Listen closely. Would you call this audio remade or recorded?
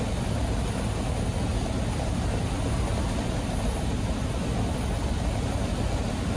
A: recorded